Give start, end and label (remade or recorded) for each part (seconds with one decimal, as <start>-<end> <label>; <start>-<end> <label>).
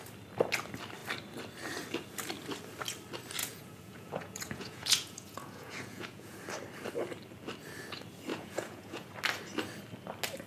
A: 0.0-3.4 recorded; 3.4-6.4 remade; 6.4-8.3 recorded; 8.3-9.1 remade; 9.1-10.5 recorded